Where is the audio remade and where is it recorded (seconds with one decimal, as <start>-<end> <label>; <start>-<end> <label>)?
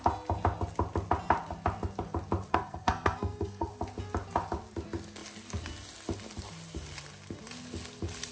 0.0-2.5 recorded; 2.5-3.7 remade; 3.7-8.3 recorded